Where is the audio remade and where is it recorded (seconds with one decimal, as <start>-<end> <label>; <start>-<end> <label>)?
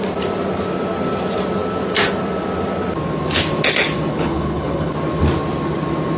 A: 0.0-4.1 recorded; 4.1-4.9 remade; 4.9-6.2 recorded